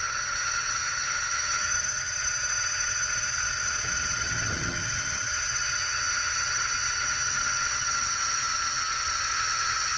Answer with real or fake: fake